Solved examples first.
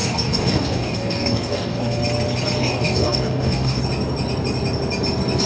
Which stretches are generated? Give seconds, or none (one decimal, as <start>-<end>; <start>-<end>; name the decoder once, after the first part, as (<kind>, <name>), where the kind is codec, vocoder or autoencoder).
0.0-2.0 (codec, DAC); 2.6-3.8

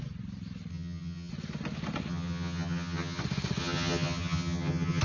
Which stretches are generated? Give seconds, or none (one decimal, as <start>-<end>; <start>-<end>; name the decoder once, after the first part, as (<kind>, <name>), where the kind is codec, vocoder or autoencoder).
0.7-1.3 (vocoder, HiFi-GAN); 2.1-3.2; 3.6-5.0

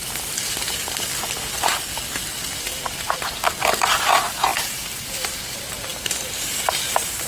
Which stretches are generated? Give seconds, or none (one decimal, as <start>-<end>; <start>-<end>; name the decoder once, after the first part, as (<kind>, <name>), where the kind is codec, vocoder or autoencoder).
0.0-1.1 (vocoder, BigVGAN v2); 4.0-7.3